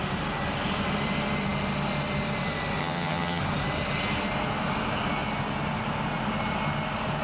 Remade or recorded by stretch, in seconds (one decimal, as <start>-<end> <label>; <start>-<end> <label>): 0.0-2.8 recorded; 2.8-3.4 remade; 3.4-7.2 recorded